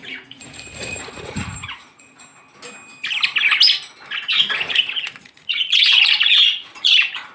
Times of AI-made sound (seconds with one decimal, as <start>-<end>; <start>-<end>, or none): 0.0-2.3; 4.7-7.3